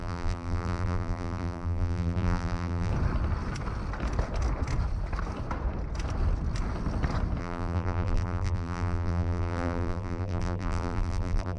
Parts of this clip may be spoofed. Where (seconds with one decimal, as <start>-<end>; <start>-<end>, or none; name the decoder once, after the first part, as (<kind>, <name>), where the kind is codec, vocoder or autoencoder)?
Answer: 0.0-2.9 (vocoder, BigVGAN v2); 7.4-11.6